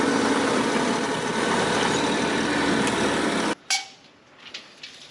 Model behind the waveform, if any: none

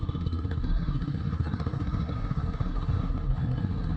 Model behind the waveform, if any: codec, SNAC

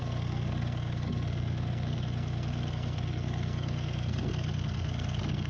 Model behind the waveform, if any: codec, SNAC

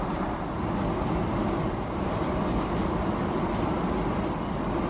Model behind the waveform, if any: none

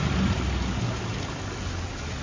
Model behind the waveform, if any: none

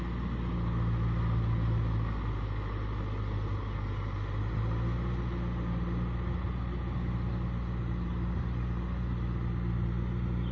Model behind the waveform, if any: none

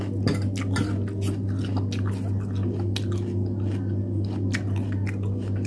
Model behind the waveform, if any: none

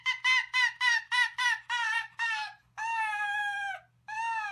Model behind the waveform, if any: none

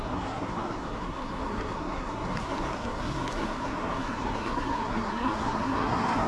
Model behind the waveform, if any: codec, SNAC